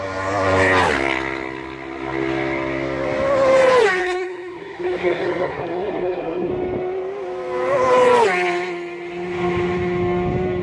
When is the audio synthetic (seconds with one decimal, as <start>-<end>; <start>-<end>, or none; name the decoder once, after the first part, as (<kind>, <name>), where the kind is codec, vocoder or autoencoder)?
4.0-6.5 (codec, SNAC)